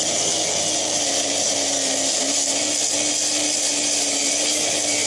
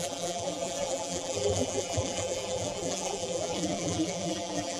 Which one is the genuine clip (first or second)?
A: first